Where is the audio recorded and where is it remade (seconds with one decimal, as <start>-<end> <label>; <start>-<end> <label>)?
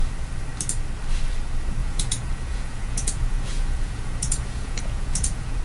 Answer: 0.0-1.8 recorded; 1.8-5.6 remade